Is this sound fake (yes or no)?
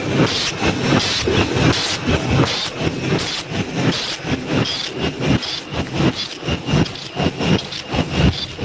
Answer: no